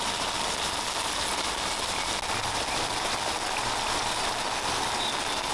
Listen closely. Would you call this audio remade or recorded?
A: recorded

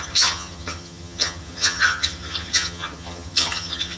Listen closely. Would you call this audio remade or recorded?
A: remade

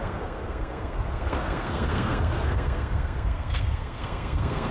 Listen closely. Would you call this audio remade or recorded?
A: remade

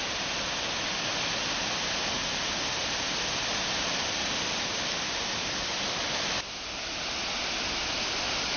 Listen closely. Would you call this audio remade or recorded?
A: recorded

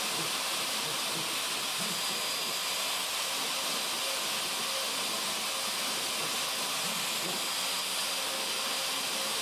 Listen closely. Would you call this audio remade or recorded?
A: recorded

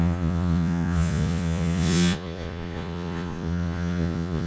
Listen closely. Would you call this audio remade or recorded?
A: remade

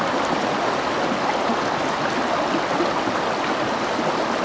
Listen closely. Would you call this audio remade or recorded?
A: recorded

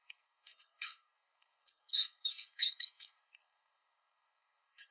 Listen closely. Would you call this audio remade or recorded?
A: remade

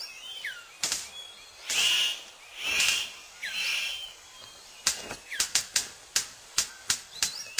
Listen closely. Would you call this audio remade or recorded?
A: recorded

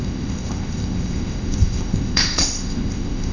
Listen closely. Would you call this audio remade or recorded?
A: remade